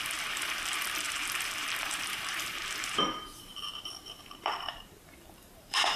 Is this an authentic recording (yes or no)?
no